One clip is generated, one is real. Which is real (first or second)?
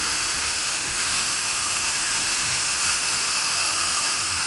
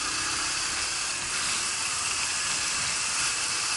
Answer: second